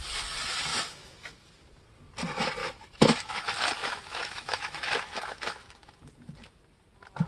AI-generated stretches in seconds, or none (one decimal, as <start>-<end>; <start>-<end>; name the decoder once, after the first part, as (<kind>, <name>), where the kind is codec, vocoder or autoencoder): 0.7-1.5 (autoencoder, DAC-VAE); 2.6-3.4; 3.8-5.9

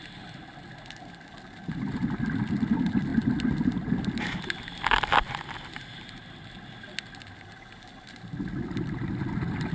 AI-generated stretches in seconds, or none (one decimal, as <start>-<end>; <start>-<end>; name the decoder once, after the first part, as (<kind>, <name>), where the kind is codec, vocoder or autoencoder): none

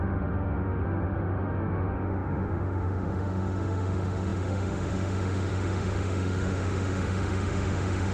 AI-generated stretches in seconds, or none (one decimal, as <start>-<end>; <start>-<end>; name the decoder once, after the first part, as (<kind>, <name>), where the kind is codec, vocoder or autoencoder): 0.0-8.1 (autoencoder, DAC-VAE)

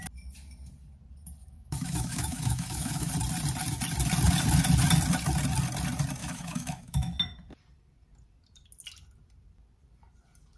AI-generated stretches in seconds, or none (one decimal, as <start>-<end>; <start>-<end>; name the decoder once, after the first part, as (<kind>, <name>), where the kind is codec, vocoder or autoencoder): 1.4-3.1 (autoencoder, DAC-VAE); 6.2-7.2